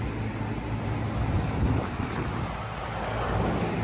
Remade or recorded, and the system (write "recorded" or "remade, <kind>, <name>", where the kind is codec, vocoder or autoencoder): recorded